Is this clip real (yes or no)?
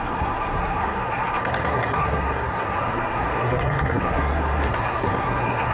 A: no